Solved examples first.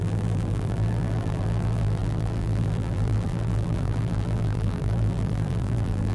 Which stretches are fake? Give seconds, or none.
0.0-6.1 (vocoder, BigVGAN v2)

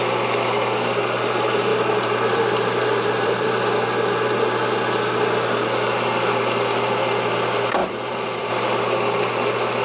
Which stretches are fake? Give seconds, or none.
1.7-3.5 (vocoder, BigVGAN v2); 7.8-8.5

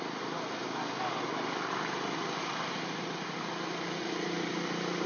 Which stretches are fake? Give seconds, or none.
none

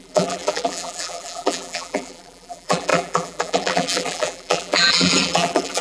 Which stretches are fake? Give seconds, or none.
0.0-5.8 (vocoder, BigVGAN v2)

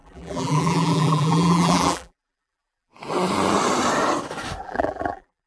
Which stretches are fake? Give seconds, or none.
0.0-2.9 (vocoder, BigVGAN v2); 4.6-5.5

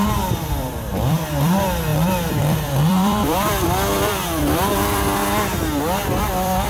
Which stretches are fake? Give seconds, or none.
0.0-5.2 (vocoder, BigVGAN v2); 6.2-6.7

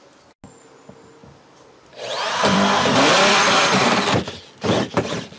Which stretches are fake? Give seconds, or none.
1.2-4.4 (vocoder, BigVGAN v2)